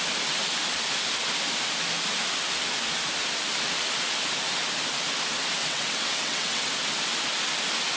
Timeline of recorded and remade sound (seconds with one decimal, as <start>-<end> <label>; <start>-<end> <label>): 0.0-5.6 recorded; 5.6-6.7 remade; 6.7-8.0 recorded